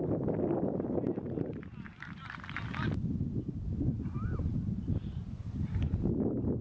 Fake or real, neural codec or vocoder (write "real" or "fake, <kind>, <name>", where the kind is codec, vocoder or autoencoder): real